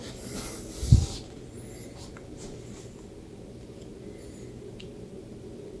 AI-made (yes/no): no